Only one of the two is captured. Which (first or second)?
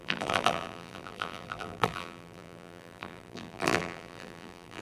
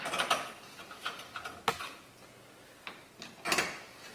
second